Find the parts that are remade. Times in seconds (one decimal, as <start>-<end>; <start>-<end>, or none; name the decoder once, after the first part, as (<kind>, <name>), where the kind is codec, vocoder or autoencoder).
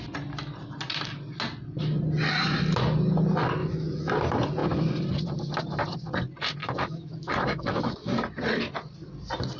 3.6-4.1 (autoencoder, DAC-VAE); 6.6-8.1